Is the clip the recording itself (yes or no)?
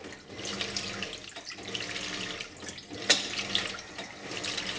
yes